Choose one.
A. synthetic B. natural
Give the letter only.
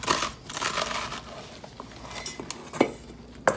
B